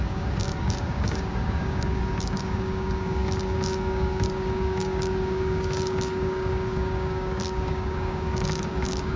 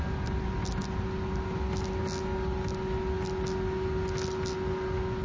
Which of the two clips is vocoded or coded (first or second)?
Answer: first